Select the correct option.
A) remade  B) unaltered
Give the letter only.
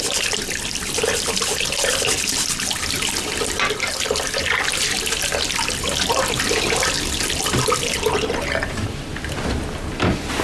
B